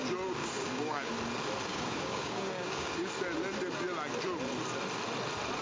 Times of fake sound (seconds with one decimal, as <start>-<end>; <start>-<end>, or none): 0.4-1.1; 1.7-3.1